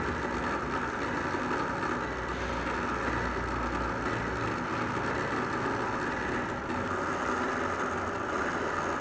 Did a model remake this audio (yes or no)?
no